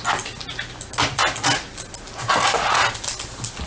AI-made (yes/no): no